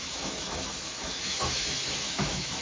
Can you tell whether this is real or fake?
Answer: fake